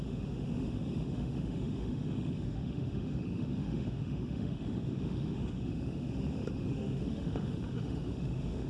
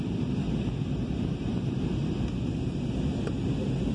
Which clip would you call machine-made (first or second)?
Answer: first